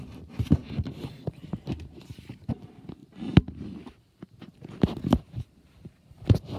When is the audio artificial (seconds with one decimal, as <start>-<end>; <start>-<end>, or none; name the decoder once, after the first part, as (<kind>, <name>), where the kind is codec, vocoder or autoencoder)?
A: 0.0-3.0 (vocoder, BigVGAN v2); 5.4-6.6